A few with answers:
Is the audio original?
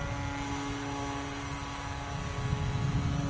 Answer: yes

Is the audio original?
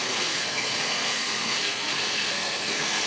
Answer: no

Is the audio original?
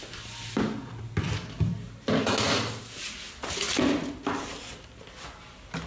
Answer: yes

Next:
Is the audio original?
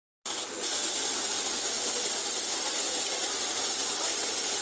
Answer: yes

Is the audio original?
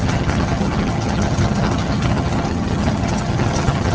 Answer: no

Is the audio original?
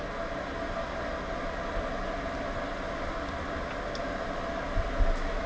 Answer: yes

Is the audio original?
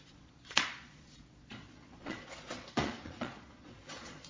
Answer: no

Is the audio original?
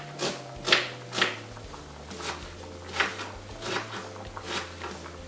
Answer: yes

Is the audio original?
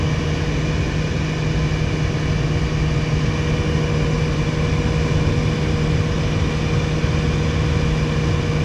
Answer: yes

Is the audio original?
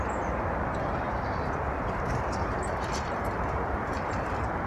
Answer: no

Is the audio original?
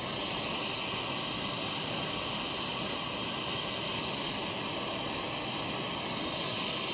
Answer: yes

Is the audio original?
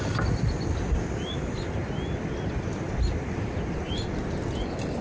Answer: yes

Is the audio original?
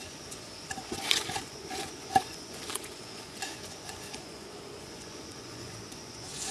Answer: no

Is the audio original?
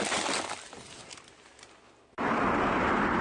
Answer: yes